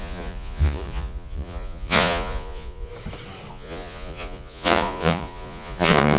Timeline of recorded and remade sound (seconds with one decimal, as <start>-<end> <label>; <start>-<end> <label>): 0.0-2.9 remade; 2.9-3.5 recorded; 3.5-6.2 remade